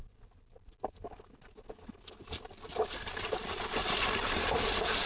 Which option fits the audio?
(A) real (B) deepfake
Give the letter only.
A